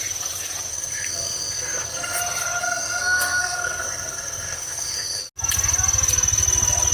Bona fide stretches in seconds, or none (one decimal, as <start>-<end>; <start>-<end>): 0.0-0.7; 2.2-2.6; 5.2-6.9

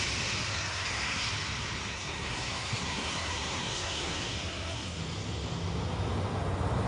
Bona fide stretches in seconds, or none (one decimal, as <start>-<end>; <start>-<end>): 0.0-0.5; 1.3-1.9; 5.0-6.9

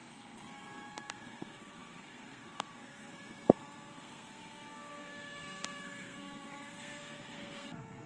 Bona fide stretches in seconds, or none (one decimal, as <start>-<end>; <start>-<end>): none

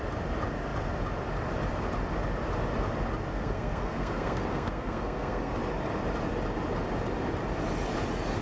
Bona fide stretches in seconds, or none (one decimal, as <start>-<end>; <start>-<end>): 0.0-3.3; 5.5-8.4

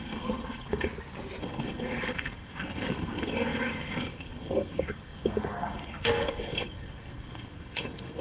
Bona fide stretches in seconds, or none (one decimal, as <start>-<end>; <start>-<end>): 0.9-1.4